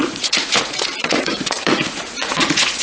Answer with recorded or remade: remade